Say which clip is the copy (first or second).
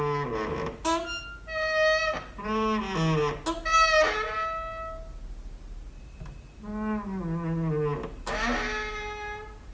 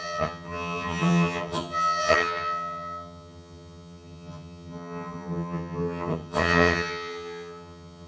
second